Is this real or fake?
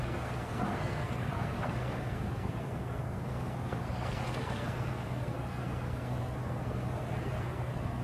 fake